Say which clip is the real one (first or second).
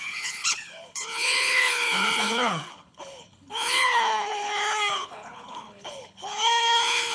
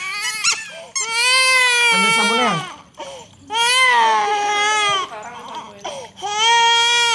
second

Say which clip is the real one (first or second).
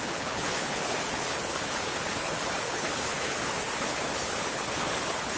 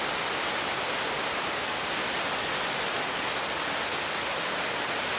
second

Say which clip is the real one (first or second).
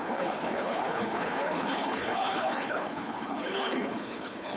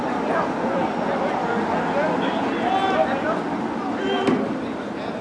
second